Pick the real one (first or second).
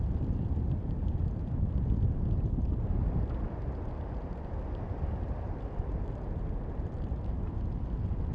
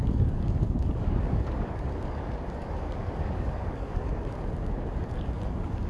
first